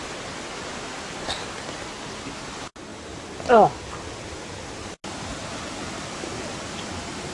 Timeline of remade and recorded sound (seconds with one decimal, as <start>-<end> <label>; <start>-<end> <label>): 0.0-7.3 recorded